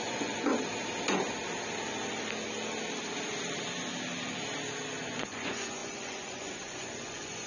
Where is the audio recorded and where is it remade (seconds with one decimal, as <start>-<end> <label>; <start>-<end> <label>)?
0.0-0.5 remade; 0.5-5.0 recorded; 5.0-7.5 remade